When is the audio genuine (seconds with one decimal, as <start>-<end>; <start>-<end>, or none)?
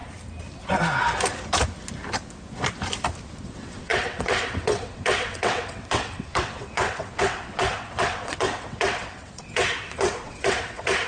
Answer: 0.0-3.4